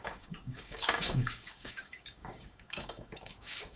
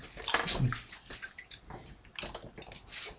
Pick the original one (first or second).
second